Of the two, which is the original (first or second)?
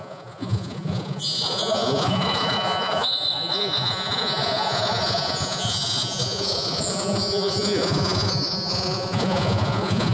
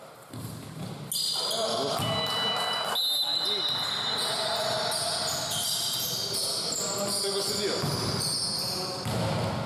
second